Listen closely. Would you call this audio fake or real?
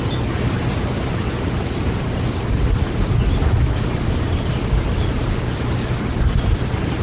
real